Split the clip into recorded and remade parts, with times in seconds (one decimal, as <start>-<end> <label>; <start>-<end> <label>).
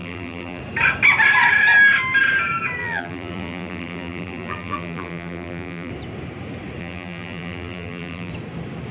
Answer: 0.0-0.6 remade; 0.6-2.8 recorded; 2.8-5.9 remade; 5.9-6.8 recorded; 6.8-8.3 remade; 8.3-8.9 recorded